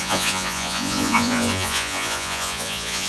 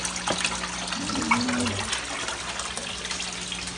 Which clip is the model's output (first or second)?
first